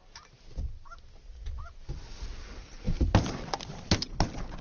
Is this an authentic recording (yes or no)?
yes